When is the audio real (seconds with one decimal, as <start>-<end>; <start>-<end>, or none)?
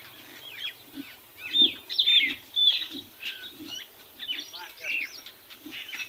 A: 0.0-6.1